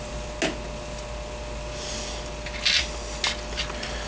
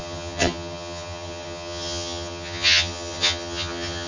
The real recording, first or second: first